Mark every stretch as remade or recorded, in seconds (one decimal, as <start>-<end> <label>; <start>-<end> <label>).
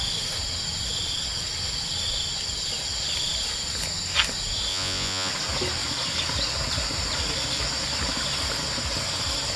0.0-4.7 recorded; 4.7-5.3 remade; 5.3-9.6 recorded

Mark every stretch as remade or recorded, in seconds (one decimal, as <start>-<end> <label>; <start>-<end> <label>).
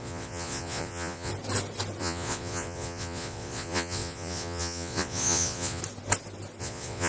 0.0-1.3 remade; 1.3-2.0 recorded; 2.0-5.8 remade; 5.8-6.6 recorded; 6.6-7.1 remade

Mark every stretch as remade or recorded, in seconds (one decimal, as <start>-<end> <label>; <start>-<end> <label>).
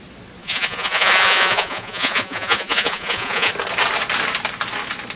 0.0-0.4 recorded; 0.4-3.5 remade; 3.5-5.2 recorded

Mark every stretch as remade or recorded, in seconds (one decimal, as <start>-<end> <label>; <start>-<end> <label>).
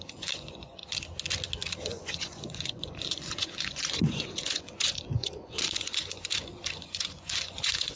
0.0-0.8 remade; 0.8-1.9 recorded; 1.9-8.0 remade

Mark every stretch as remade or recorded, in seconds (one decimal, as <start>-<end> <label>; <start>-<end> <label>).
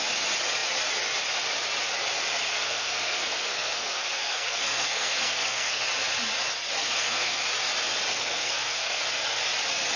0.0-2.5 recorded; 2.5-5.8 remade; 5.8-6.8 recorded; 6.8-7.4 remade; 7.4-8.1 recorded; 8.1-9.0 remade; 9.0-10.0 recorded